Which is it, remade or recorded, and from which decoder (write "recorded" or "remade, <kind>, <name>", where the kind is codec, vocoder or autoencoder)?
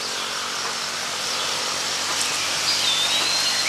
recorded